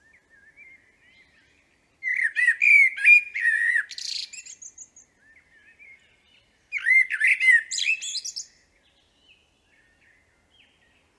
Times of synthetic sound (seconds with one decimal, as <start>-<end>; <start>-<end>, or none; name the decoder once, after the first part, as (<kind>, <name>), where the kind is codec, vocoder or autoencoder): none